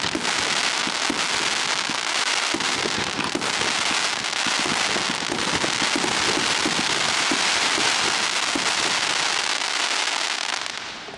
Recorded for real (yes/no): yes